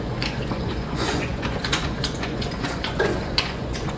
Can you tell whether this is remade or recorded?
remade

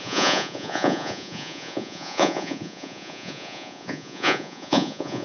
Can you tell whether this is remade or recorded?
remade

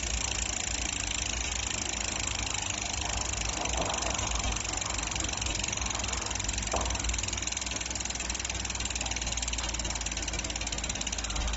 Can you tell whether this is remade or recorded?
recorded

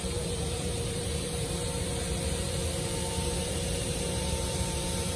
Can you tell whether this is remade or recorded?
remade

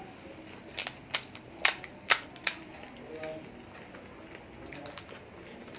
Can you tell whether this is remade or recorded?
recorded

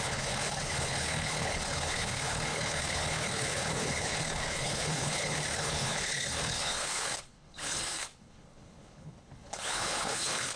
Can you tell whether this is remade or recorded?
remade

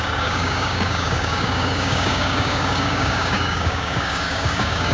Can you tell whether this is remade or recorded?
remade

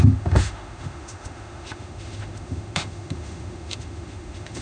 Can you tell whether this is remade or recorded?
remade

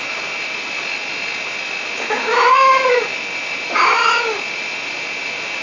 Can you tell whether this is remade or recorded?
recorded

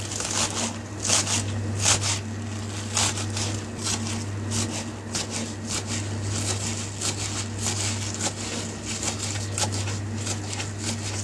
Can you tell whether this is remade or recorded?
recorded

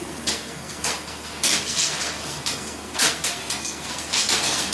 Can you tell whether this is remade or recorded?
remade